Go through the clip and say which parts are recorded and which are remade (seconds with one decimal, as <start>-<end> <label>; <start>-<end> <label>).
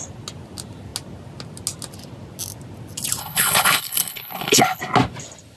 0.0-3.2 recorded; 3.2-4.8 remade; 4.8-5.6 recorded